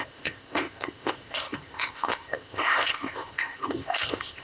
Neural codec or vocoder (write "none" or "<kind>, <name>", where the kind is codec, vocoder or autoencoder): codec, ZipCodec